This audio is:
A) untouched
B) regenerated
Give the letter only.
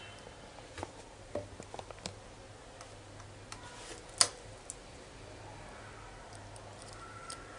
A